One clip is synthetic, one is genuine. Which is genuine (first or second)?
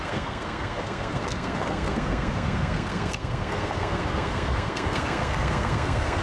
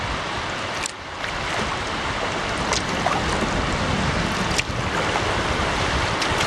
second